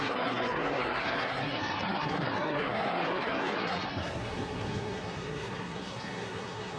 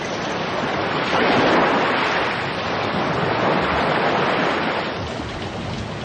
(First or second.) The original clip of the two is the second